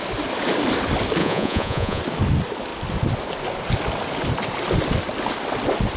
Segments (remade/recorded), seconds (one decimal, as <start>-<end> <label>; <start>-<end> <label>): 0.0-1.2 recorded; 1.2-2.0 remade; 2.0-6.0 recorded